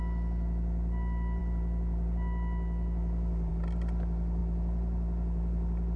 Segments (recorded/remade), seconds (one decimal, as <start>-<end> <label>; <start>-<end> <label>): 0.0-6.0 recorded